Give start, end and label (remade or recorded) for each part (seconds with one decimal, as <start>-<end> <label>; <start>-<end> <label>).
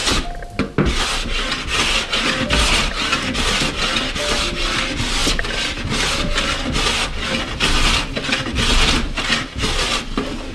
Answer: 0.0-10.5 recorded